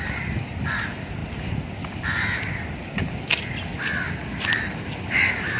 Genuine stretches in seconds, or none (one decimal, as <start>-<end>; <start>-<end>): 0.0-5.6

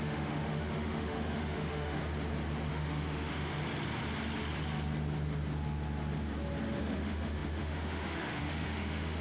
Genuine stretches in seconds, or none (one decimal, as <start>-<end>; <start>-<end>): 2.0-2.7; 3.6-6.8

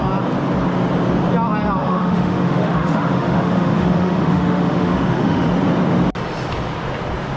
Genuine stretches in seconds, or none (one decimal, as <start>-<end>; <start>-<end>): 0.0-1.8; 5.5-7.4

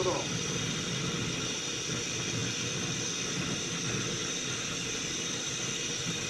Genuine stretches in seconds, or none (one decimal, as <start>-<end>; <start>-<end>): 0.0-6.3

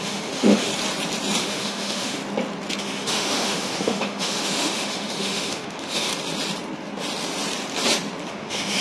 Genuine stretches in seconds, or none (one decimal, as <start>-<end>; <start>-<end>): 0.7-1.4; 2.2-2.8; 6.1-8.3

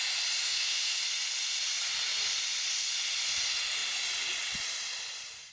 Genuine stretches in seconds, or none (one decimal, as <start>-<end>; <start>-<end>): 0.0-0.4; 1.0-5.5